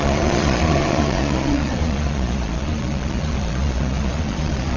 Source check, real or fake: fake